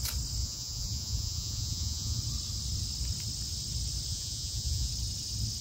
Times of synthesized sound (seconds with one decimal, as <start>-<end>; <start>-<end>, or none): 0.4-2.2; 4.1-4.9